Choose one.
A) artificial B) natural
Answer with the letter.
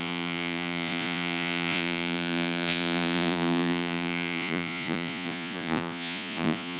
A